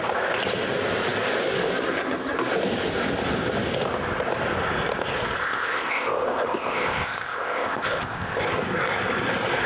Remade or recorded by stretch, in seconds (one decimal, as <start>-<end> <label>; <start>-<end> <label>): 0.0-5.4 recorded; 5.4-8.4 remade; 8.4-9.7 recorded